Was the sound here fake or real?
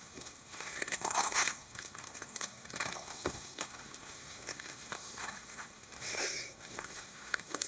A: fake